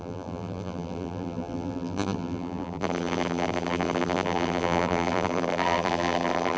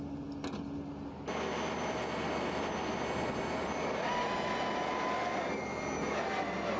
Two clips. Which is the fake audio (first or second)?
first